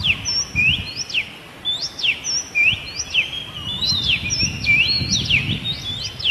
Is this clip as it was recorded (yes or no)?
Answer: yes